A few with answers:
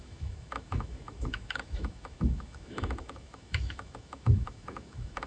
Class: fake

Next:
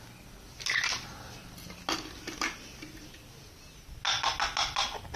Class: real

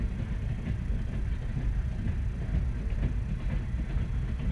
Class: real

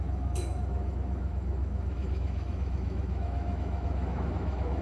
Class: fake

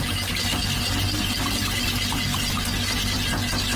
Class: real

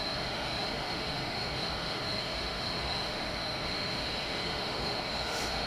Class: fake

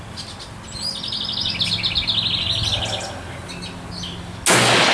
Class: real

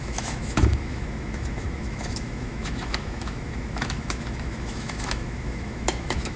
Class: fake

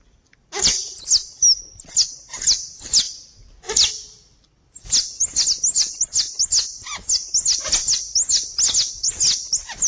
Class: real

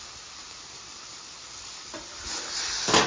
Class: real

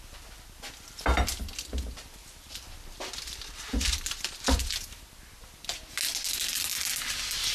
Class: real